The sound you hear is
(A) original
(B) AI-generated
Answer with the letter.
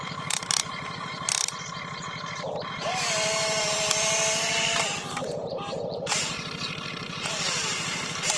B